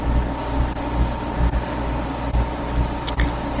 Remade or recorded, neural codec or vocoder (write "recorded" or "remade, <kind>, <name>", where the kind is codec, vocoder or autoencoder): recorded